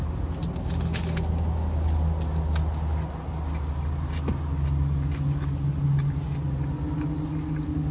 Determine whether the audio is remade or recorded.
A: recorded